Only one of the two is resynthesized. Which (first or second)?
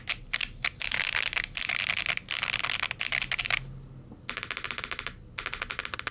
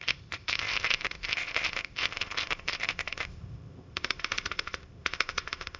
second